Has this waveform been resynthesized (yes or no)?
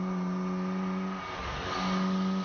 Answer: no